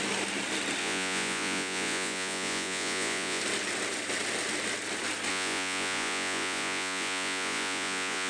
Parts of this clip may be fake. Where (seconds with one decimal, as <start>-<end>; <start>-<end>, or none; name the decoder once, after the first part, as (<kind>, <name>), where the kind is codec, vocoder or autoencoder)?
0.8-3.4 (vocoder, Vocos); 5.3-8.3